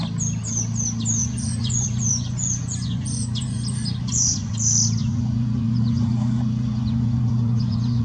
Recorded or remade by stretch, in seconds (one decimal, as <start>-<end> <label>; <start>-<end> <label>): 0.0-1.2 recorded; 1.2-4.5 remade; 4.5-5.0 recorded; 5.0-8.0 remade